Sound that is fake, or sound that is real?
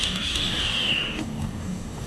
fake